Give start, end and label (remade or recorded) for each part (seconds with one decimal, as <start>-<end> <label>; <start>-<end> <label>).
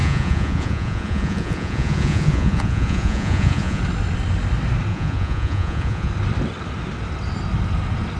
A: 0.0-3.8 remade; 3.8-4.9 recorded; 4.9-6.1 remade; 6.1-8.2 recorded